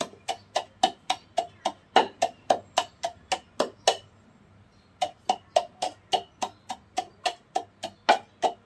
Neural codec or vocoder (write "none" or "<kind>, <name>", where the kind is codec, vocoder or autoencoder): none